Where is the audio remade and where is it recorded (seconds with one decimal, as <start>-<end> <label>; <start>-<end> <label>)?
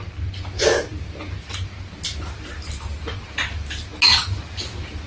0.0-5.1 recorded